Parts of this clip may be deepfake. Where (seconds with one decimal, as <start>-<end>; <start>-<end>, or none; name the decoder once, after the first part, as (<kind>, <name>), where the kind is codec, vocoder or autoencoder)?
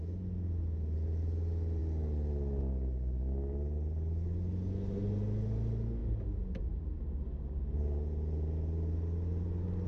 none